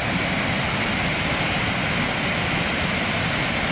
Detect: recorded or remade recorded